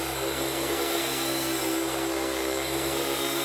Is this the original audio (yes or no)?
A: no